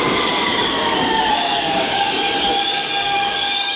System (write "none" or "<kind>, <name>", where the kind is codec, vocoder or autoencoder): codec, DAC